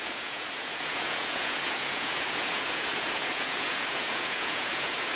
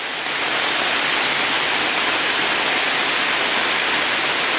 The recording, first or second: second